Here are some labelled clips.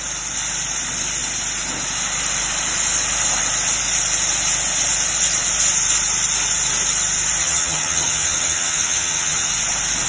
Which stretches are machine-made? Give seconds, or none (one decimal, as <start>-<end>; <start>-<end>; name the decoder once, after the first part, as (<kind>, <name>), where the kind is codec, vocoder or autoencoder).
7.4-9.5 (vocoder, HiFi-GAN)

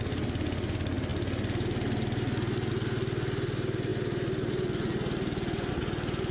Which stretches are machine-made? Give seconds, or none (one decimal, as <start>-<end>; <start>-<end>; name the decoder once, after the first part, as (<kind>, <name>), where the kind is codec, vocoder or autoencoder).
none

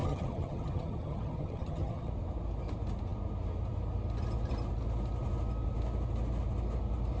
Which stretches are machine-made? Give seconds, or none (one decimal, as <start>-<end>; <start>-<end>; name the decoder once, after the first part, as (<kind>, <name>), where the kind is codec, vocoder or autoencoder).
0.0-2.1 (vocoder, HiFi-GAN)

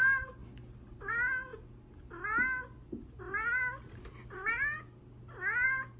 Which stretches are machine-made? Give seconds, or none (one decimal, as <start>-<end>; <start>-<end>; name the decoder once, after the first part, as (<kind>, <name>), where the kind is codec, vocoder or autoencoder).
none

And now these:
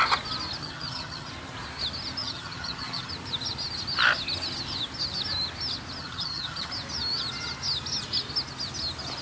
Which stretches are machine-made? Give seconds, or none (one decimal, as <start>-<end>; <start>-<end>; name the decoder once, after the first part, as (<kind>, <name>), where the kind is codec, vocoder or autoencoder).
0.6-1.3 (vocoder, HiFi-GAN); 2.2-3.1; 6.0-6.7